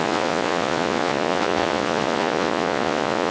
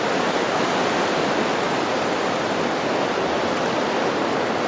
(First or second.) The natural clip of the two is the second